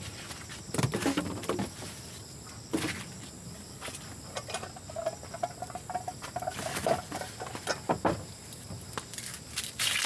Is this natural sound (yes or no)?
yes